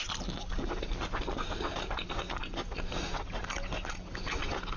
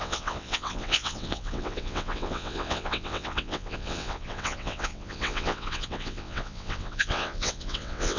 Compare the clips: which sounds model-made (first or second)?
second